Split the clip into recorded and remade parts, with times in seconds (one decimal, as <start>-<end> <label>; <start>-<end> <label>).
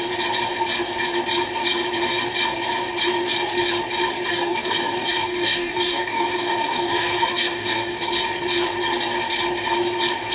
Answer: 0.0-4.3 recorded; 4.3-8.1 remade; 8.1-10.3 recorded